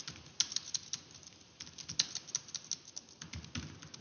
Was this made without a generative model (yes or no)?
yes